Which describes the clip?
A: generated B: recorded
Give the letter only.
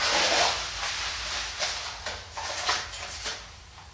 B